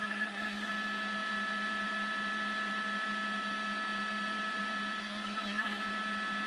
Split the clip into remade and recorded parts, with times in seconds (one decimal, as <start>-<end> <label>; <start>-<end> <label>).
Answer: 0.0-0.7 remade; 0.7-5.0 recorded; 5.0-5.8 remade; 5.8-6.5 recorded